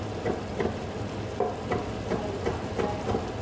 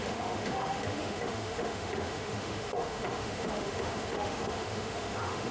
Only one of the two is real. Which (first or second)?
first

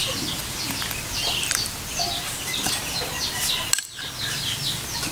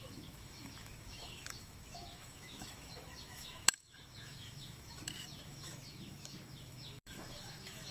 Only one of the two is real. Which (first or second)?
first